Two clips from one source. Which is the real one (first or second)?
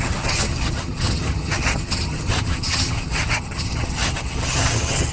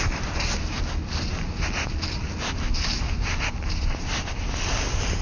second